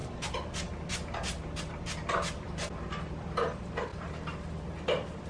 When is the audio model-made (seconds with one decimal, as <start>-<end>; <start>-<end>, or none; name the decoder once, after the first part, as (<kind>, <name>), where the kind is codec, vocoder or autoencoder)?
none